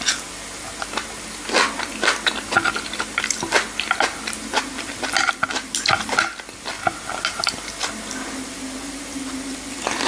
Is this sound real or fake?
real